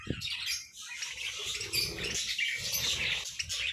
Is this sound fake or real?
real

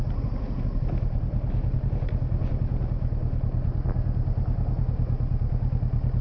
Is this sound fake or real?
real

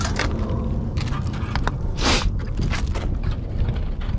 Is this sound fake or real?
real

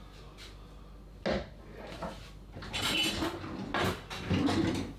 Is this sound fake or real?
real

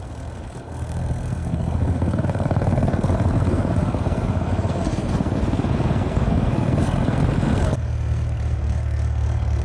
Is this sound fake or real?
fake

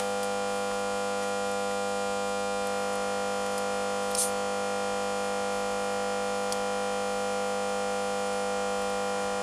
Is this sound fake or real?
real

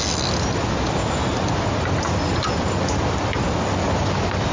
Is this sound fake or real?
real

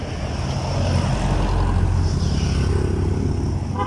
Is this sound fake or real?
real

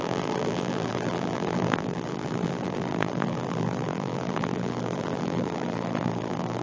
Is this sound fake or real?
fake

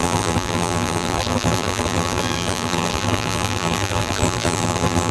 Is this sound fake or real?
fake